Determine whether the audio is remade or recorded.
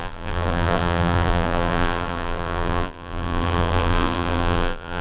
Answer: remade